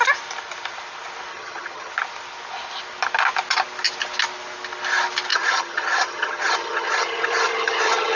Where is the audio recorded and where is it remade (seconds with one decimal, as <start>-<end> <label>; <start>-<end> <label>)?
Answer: 0.0-1.3 recorded; 1.3-1.9 remade; 1.9-5.3 recorded; 5.3-8.2 remade

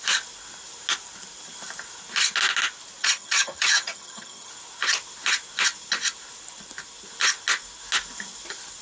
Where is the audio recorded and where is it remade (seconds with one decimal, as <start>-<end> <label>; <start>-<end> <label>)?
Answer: 0.0-3.0 recorded; 3.0-4.5 remade; 4.5-8.8 recorded